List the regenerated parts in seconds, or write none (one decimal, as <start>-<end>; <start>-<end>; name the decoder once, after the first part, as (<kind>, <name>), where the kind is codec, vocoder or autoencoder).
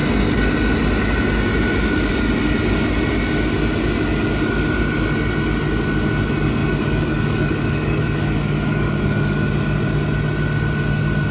6.6-9.5 (codec, DAC)